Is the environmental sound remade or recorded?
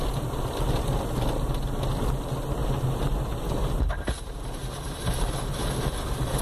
recorded